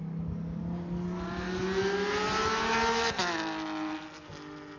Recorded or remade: recorded